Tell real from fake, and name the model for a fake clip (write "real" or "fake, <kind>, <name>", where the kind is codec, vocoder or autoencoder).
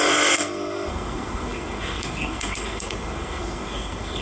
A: fake, codec, SNAC